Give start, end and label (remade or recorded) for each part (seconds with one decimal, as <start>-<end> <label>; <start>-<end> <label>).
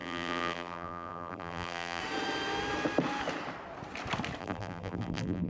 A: 0.0-2.0 remade; 2.0-4.4 recorded; 4.4-5.5 remade